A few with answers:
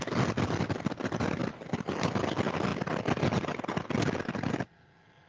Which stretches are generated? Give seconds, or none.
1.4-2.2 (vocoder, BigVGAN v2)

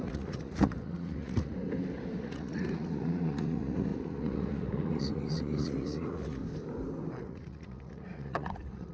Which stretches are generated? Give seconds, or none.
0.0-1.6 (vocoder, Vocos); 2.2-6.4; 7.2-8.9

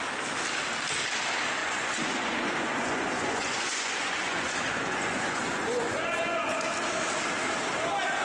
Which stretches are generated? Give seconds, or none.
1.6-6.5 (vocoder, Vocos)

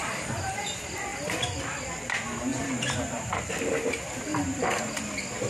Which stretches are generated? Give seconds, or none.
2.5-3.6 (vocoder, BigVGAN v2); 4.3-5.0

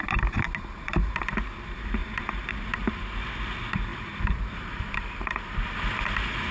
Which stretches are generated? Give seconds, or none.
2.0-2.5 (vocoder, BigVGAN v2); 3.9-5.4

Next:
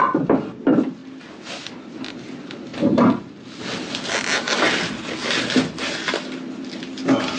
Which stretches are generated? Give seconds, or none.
none

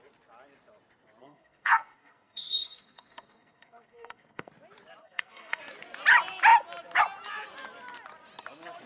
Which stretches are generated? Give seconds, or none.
1.2-4.5 (codec, SNAC); 5.0-5.6

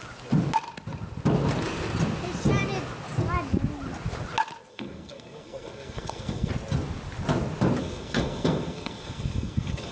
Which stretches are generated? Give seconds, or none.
4.7-6.5 (codec, SNAC); 7.8-9.9